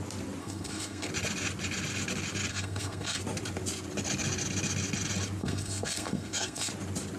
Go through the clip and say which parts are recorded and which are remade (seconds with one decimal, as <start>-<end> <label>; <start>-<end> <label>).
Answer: 0.0-0.4 recorded; 0.4-1.1 remade; 1.1-2.5 recorded; 2.5-3.2 remade; 3.2-5.4 recorded; 5.4-6.7 remade; 6.7-7.2 recorded